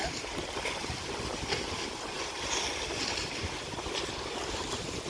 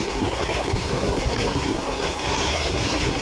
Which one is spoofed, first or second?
second